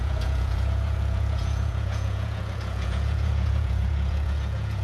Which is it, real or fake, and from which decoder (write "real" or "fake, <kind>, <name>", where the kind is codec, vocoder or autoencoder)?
fake, vocoder, Vocos